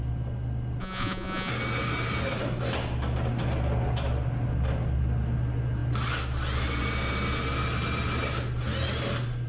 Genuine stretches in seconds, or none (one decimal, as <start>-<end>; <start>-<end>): 0.0-0.8; 1.5-9.5